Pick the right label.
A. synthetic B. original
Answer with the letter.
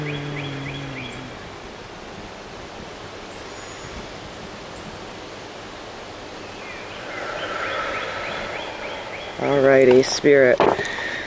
B